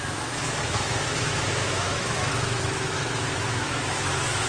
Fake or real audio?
fake